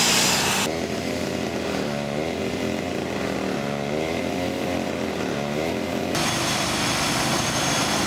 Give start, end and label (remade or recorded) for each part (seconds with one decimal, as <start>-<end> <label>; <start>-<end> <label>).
0.0-2.4 recorded; 2.4-4.2 remade; 4.2-8.1 recorded